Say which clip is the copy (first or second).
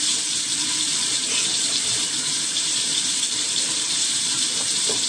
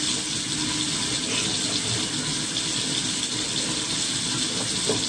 first